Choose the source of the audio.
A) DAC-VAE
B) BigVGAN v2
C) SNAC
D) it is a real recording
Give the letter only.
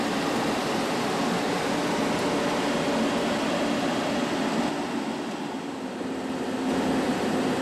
D